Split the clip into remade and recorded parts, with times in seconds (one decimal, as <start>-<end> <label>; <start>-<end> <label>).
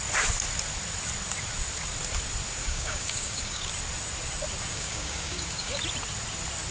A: 0.0-2.6 recorded; 2.6-3.7 remade; 3.7-4.7 recorded; 4.7-5.8 remade; 5.8-6.7 recorded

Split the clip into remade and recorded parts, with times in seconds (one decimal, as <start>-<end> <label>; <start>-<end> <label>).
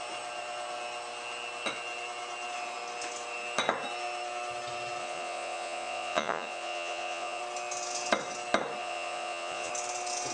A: 0.0-5.0 recorded; 5.0-7.4 remade; 7.4-8.8 recorded; 8.8-9.7 remade; 9.7-10.3 recorded